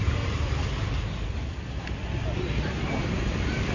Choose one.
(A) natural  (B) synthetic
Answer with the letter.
B